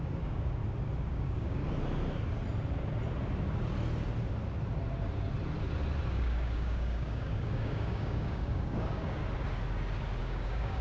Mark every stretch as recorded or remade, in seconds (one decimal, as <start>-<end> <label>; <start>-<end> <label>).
0.0-0.6 remade; 0.6-1.1 recorded; 1.1-1.6 remade; 1.6-6.1 recorded; 6.1-9.2 remade; 9.2-10.2 recorded; 10.2-10.8 remade